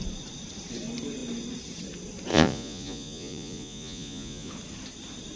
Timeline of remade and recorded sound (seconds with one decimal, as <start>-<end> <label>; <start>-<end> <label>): 0.0-2.3 recorded; 2.3-4.5 remade; 4.5-5.4 recorded